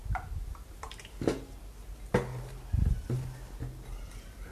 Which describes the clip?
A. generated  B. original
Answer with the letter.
B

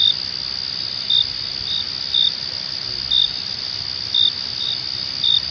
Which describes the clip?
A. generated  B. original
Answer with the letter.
B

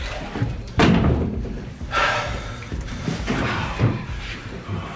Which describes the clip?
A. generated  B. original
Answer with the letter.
A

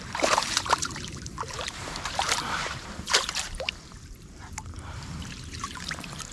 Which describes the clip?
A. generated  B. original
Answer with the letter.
A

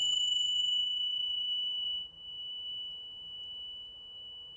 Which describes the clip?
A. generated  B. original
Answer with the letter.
A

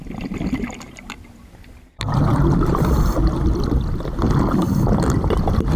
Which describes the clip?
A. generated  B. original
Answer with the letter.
B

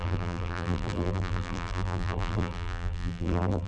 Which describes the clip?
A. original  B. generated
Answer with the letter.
B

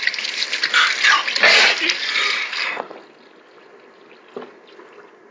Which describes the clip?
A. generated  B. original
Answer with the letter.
B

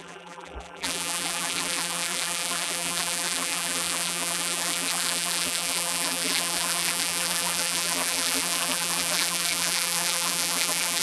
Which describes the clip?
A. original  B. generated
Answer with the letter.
B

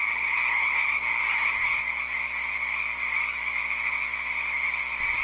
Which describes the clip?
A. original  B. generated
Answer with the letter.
A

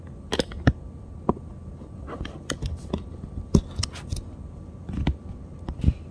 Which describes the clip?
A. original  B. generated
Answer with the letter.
A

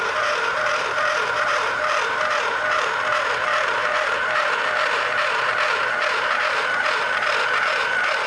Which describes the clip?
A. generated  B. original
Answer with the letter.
A